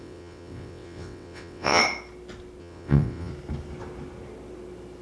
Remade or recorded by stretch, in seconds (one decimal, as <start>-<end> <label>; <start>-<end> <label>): 0.0-1.8 remade; 1.8-2.6 recorded; 2.6-3.3 remade; 3.3-5.0 recorded